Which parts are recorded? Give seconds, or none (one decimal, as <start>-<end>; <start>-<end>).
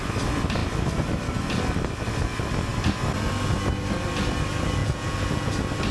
0.0-4.8; 5.5-5.9